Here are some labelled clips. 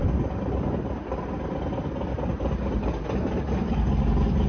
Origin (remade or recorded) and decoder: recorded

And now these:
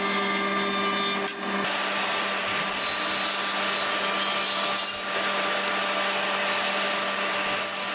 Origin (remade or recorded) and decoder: recorded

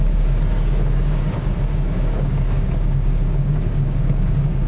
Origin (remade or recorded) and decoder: remade, codec, DAC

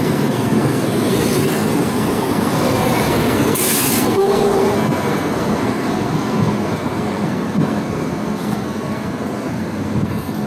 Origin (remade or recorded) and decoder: remade, codec, SNAC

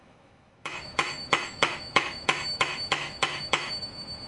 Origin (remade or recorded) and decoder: remade, autoencoder, DAC-VAE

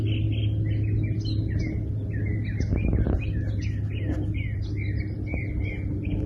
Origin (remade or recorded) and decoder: recorded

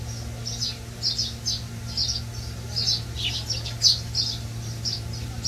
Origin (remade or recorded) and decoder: recorded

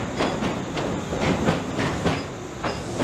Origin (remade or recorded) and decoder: recorded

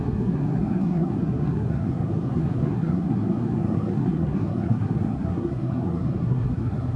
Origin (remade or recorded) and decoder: remade, codec, SNAC